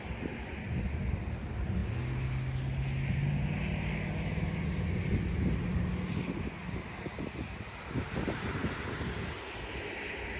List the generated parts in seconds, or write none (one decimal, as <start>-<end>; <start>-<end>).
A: none

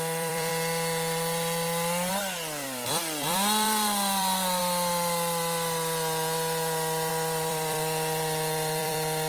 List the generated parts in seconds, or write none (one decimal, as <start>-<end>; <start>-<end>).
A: 0.0-0.5; 2.1-4.6; 7.1-9.3

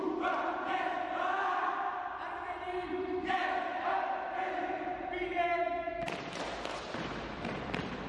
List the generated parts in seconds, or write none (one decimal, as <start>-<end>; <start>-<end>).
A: 0.0-0.9; 1.6-8.1

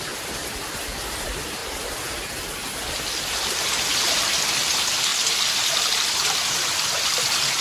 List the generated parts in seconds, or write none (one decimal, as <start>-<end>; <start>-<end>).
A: 0.0-1.6; 4.5-5.1; 6.1-7.6

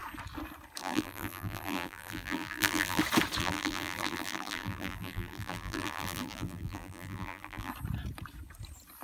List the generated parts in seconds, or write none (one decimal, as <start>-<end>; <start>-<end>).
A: 0.8-3.0; 3.4-7.7

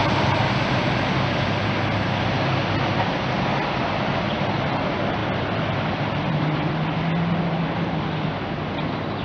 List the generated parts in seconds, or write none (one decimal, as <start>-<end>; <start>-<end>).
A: 0.0-1.0; 5.2-8.2